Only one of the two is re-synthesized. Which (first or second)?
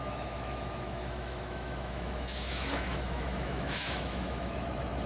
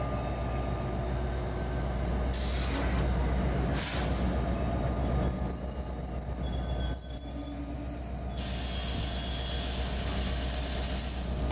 first